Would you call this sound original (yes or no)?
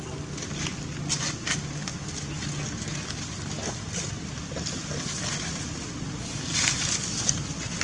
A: yes